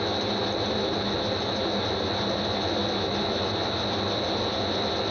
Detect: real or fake real